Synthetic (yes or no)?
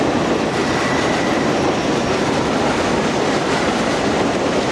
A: no